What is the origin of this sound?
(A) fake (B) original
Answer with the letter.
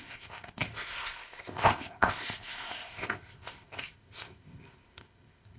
A